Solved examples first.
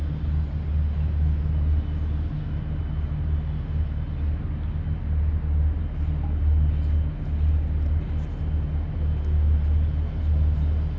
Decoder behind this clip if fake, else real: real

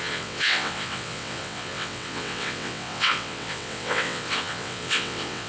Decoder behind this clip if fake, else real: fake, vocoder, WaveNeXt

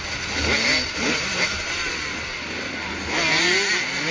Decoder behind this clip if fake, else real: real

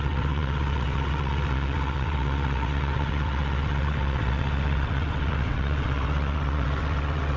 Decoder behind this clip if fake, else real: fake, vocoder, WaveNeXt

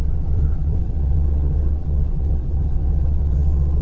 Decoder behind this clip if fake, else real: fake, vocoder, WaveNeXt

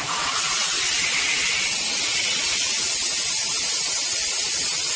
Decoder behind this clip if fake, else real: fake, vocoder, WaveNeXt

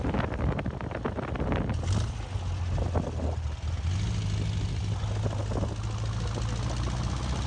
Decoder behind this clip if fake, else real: real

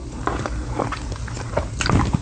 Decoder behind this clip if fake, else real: real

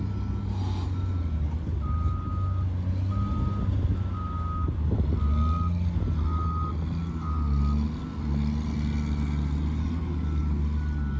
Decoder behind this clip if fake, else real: real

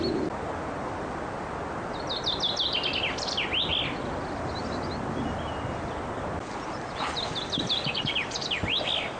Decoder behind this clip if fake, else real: real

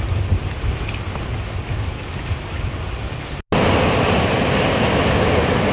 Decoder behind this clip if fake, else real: real